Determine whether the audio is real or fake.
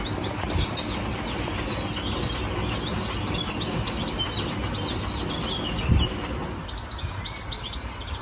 real